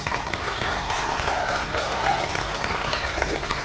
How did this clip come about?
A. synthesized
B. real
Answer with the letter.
A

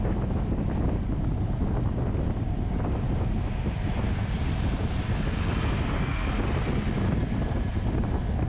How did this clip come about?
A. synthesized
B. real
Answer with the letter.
B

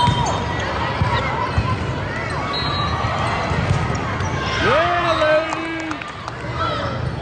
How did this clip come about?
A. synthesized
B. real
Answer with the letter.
B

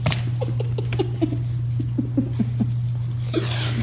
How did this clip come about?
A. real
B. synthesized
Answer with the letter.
A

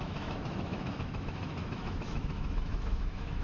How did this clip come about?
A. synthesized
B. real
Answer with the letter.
A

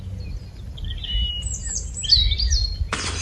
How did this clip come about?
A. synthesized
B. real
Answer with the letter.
B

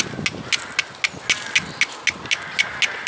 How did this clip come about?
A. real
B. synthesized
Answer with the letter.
A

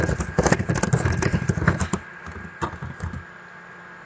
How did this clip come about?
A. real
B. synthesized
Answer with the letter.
A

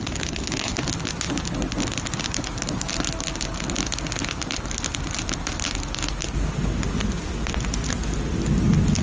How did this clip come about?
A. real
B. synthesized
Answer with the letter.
A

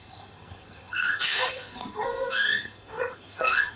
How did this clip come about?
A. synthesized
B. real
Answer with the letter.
A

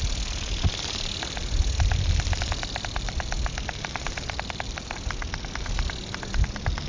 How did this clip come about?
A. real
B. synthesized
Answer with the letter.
A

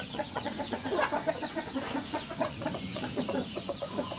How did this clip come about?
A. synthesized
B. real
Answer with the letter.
A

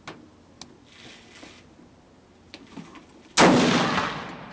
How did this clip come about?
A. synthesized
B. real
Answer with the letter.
B